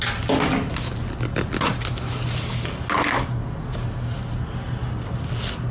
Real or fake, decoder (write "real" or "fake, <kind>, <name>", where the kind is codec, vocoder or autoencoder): real